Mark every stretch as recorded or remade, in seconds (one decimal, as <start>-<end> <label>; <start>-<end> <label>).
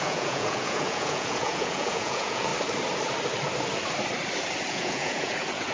0.0-2.5 remade; 2.5-4.7 recorded; 4.7-5.7 remade